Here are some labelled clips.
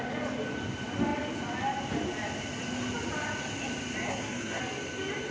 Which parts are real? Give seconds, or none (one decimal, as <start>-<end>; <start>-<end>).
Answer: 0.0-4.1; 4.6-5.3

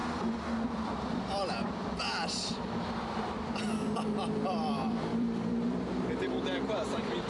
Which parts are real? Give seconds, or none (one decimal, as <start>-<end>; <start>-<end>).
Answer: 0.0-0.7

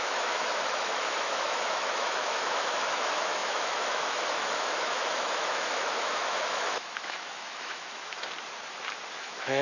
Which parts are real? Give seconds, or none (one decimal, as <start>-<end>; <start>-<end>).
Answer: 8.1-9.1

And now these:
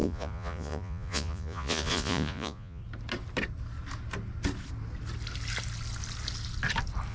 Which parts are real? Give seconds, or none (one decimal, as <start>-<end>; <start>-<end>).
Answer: 2.8-7.1

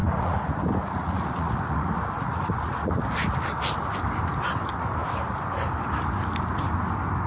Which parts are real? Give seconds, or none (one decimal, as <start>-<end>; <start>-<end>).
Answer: 0.6-1.0; 3.0-7.3